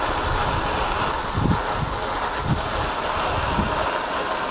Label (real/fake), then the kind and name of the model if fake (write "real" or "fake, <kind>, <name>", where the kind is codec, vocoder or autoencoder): real